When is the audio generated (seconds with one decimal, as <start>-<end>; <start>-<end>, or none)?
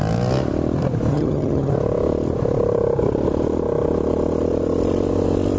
1.1-1.7